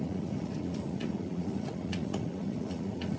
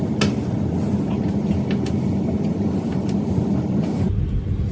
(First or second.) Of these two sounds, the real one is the second